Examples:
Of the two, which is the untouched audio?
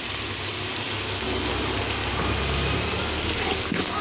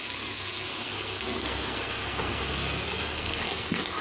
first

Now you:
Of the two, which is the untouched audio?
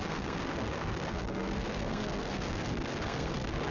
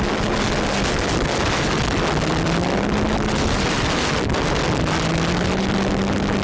second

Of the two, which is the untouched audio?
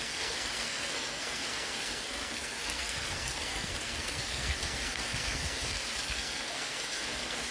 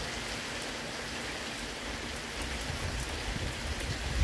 second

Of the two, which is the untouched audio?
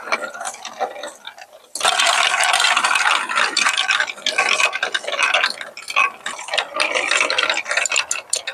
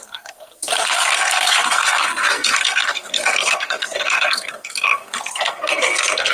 first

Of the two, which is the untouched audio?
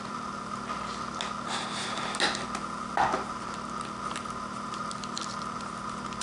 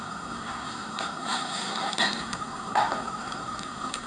first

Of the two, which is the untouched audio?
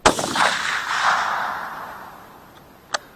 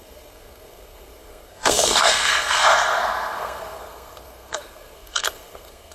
first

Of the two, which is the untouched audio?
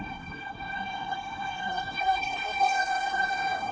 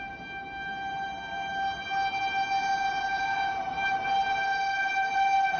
second